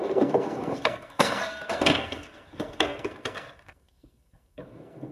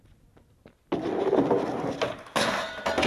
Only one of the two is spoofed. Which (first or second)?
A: first